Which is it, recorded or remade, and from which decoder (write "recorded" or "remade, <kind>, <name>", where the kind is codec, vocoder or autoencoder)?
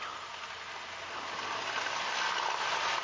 recorded